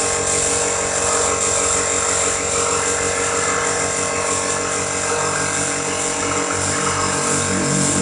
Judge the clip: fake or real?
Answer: real